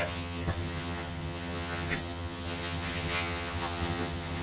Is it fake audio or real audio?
fake